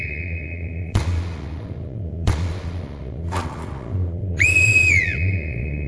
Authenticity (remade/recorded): remade